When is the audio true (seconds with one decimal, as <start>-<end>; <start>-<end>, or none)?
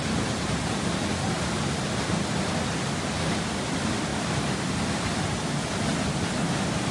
0.0-6.9